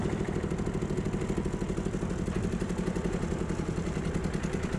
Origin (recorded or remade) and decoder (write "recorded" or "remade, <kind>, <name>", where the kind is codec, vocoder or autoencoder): remade, vocoder, BigVGAN v2